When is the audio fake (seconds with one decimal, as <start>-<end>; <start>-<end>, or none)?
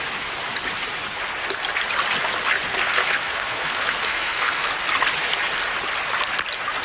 2.7-4.7